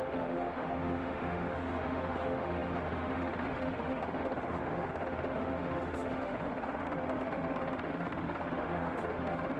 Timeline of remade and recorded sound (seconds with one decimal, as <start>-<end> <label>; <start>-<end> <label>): 0.0-9.6 remade